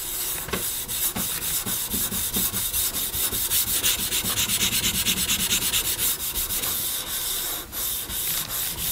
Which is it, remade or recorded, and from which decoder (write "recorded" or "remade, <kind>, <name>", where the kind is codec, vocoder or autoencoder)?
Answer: recorded